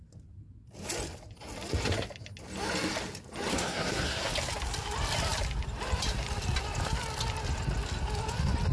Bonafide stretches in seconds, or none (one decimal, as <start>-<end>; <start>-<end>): 0.0-3.5; 4.3-8.7

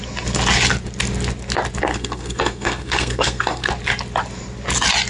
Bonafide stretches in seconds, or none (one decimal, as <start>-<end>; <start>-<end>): 0.0-1.9; 3.7-5.1

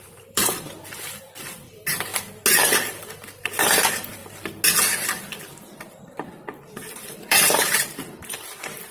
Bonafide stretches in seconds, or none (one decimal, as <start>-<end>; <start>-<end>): 2.1-2.6; 4.2-5.2